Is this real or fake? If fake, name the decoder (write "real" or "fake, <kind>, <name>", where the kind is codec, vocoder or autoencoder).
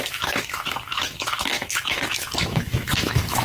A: fake, autoencoder, DAC-VAE